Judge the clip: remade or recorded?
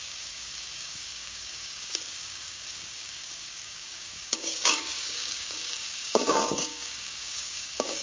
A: remade